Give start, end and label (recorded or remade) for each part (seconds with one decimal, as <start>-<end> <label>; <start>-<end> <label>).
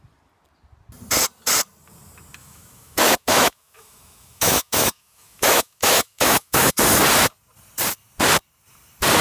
0.0-2.4 recorded; 2.4-6.7 remade; 6.7-9.2 recorded